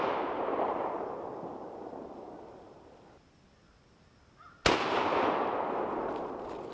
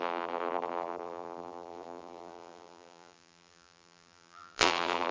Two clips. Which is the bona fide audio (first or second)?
first